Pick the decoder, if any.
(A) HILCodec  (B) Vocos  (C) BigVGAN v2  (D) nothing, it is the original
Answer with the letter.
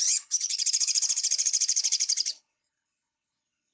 A